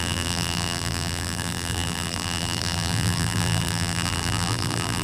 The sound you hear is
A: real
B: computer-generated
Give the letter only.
B